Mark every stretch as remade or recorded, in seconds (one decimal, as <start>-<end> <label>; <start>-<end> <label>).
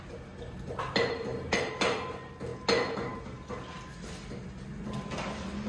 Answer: 0.0-5.7 recorded